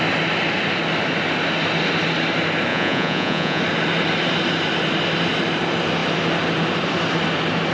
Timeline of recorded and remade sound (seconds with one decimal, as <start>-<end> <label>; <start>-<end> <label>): 0.0-2.7 recorded; 2.7-3.6 remade; 3.6-7.7 recorded